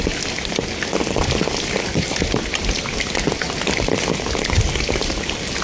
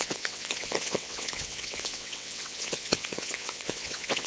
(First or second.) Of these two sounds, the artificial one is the second